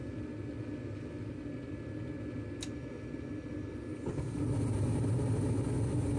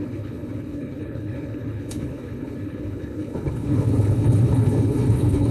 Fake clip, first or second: second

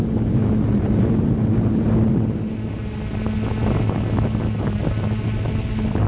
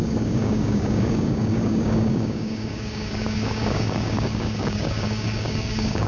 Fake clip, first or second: second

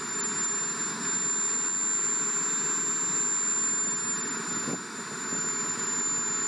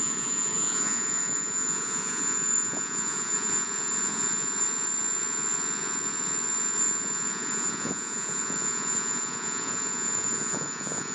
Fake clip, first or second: second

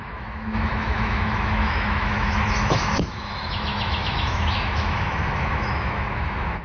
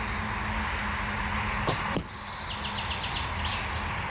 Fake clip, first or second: first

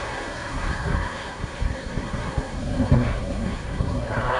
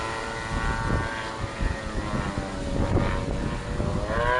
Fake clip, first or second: first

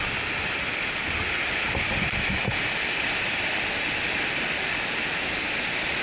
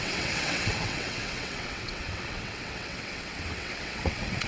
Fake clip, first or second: second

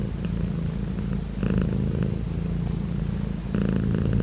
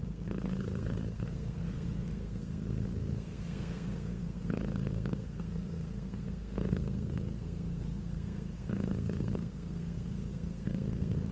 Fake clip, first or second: second